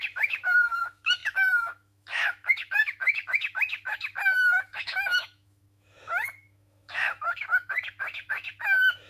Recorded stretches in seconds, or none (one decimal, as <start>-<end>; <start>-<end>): none